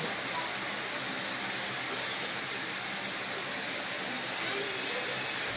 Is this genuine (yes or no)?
yes